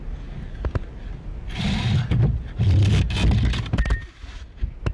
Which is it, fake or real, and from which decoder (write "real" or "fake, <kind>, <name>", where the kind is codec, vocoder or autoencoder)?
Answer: real